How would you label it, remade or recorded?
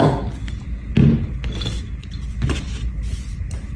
recorded